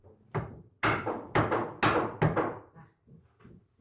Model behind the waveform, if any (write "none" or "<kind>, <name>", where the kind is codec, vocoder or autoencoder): none